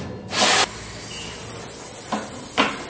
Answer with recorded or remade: recorded